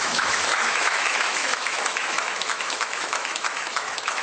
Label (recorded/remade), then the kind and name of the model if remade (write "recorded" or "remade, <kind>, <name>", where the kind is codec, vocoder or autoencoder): remade, autoencoder, DAC-VAE